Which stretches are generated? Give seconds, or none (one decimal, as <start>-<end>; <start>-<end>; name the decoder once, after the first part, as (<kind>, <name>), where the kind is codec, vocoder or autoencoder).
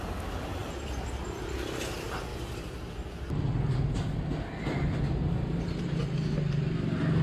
0.6-1.2 (vocoder, BigVGAN v2)